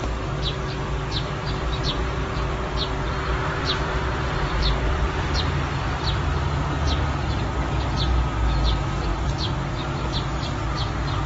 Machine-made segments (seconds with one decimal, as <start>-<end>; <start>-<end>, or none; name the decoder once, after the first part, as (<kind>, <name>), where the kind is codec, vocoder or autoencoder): 1.4-5.4 (vocoder, BigVGAN v2); 9.1-9.7